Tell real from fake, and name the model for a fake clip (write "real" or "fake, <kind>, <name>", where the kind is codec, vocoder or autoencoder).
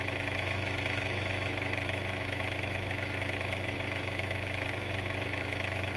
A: fake, autoencoder, DAC-VAE